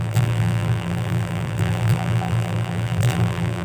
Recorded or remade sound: remade